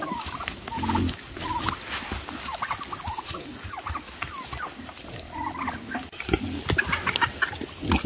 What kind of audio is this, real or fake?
real